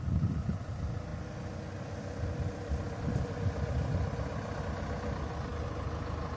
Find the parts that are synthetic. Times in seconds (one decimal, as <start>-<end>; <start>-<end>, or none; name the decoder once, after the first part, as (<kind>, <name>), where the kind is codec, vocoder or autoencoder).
none